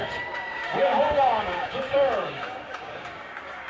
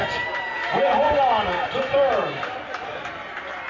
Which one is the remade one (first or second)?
first